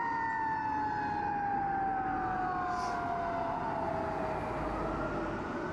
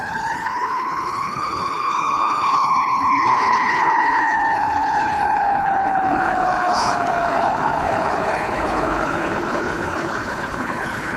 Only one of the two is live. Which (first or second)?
first